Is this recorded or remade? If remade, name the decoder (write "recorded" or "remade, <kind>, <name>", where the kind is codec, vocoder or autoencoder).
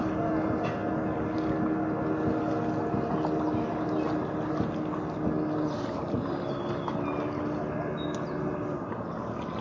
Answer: recorded